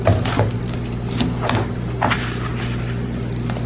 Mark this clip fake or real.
real